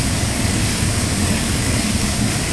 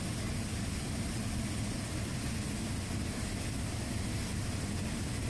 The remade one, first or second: first